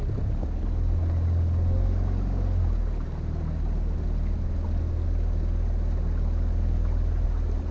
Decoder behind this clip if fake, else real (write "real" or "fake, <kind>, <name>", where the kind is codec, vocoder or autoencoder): real